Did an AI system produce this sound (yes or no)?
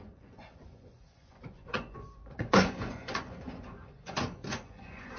yes